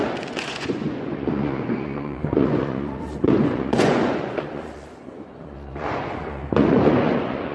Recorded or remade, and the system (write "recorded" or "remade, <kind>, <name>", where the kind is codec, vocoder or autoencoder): remade, vocoder, Vocos